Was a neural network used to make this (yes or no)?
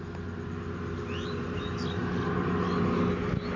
no